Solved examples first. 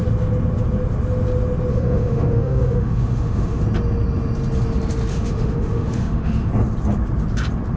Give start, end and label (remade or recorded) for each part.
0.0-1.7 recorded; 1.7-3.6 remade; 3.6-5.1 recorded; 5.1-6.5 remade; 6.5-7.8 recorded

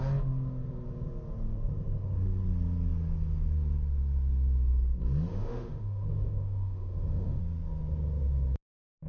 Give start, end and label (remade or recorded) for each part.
0.0-5.3 recorded; 5.3-7.4 remade; 7.4-9.1 recorded